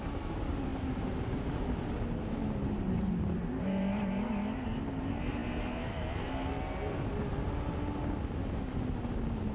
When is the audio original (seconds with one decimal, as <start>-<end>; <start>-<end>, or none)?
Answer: 0.0-9.5